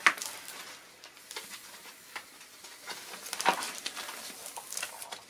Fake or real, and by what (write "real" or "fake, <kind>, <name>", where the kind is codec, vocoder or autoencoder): real